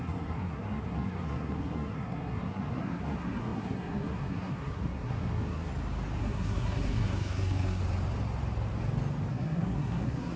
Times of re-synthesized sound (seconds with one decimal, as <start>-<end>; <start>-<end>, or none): 0.0-5.7; 6.2-7.8; 9.3-10.4